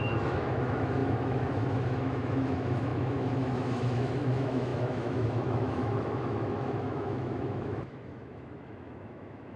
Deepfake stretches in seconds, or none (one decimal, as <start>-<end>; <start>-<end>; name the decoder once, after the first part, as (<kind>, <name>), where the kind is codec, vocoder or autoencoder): 0.0-9.6 (autoencoder, DAC-VAE)